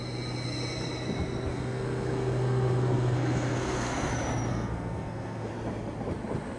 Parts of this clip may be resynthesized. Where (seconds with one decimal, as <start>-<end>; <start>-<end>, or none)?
1.5-4.1; 4.5-5.5